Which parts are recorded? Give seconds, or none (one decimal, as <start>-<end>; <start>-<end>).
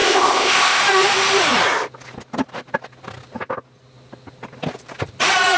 0.8-5.6